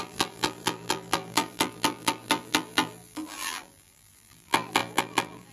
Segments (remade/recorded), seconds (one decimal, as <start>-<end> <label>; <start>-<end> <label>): 0.0-5.5 remade